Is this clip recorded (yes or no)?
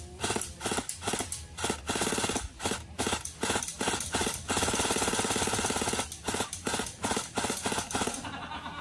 yes